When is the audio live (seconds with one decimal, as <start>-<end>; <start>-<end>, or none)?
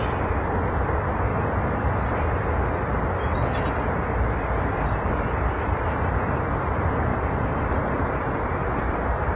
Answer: 1.3-4.6